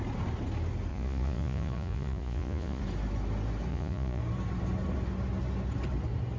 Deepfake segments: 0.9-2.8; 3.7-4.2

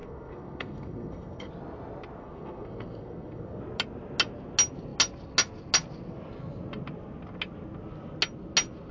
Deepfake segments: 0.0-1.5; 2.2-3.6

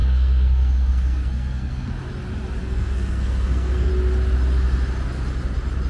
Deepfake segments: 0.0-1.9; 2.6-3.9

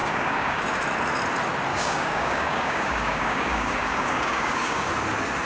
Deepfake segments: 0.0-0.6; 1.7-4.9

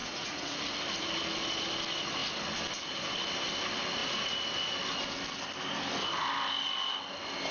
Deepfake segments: 0.0-0.6